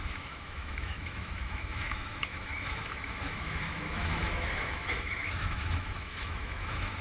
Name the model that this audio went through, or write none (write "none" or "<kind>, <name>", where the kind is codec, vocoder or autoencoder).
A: autoencoder, DAC-VAE